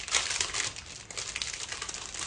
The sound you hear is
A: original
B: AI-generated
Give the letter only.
A